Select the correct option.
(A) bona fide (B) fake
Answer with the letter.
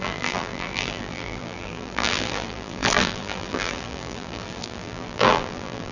B